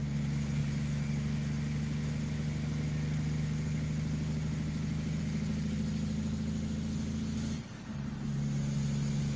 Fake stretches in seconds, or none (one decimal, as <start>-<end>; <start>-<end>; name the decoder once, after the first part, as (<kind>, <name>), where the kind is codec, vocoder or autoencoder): none